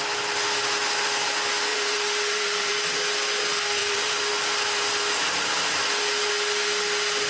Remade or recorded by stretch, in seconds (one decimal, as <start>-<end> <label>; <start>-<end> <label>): 0.0-1.7 recorded; 1.7-2.7 remade; 2.7-3.8 recorded; 3.8-4.3 remade; 4.3-7.3 recorded